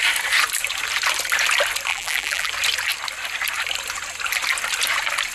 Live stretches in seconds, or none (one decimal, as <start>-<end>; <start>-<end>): 0.0-1.9; 2.5-5.3